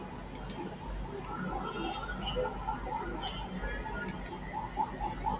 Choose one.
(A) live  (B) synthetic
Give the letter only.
A